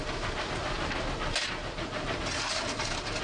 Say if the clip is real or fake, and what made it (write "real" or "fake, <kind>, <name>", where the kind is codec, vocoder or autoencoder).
real